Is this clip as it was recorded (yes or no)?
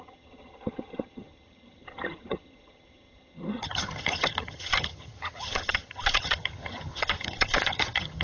no